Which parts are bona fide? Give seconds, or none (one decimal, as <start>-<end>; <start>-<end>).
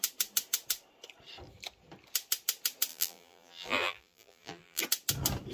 0.0-2.9; 4.8-5.5